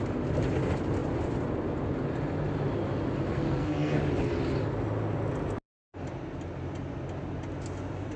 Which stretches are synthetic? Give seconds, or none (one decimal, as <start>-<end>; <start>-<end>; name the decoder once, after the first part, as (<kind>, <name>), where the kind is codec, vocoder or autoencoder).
3.3-4.0 (codec, SNAC)